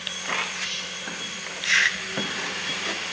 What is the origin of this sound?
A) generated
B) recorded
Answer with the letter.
B